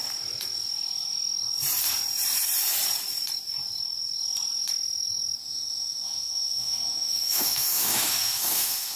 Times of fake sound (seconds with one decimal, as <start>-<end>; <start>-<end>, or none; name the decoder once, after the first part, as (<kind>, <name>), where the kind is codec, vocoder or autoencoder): 5.4-9.0 (autoencoder, DAC-VAE)